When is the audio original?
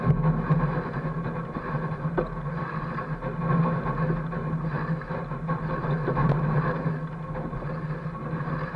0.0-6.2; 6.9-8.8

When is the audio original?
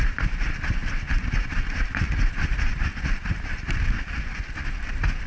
2.9-4.8